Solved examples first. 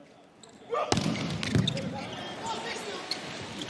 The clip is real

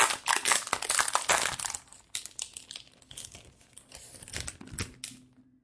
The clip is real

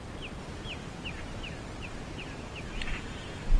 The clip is real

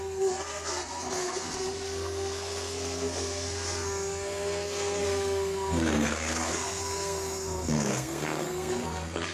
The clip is fake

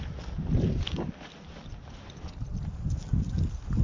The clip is real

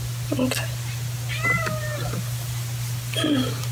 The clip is real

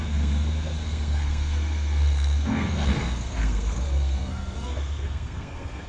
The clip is fake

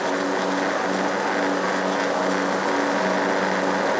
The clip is real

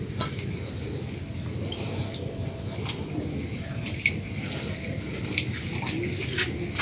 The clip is real